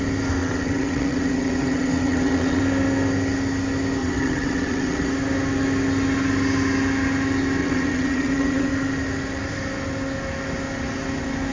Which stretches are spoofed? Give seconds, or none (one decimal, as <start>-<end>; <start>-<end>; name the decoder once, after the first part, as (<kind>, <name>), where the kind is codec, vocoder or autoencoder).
0.4-2.6 (vocoder, WaveNeXt); 4.0-5.1; 7.6-8.7